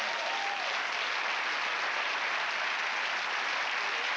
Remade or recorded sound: recorded